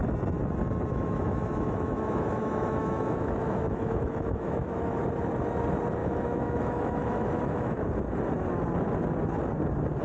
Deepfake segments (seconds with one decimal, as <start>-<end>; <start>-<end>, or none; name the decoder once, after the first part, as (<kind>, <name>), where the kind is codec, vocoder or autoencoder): 0.9-5.0 (autoencoder, DAC-VAE); 6.0-7.9